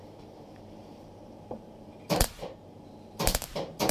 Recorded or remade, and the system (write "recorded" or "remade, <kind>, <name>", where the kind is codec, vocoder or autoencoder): remade, vocoder, BigVGAN v2